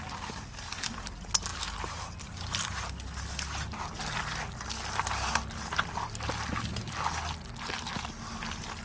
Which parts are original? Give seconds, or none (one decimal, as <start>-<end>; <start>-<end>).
0.0-8.8